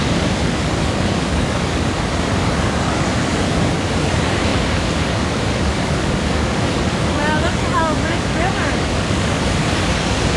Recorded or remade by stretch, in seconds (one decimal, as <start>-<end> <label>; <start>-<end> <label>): 0.0-10.4 remade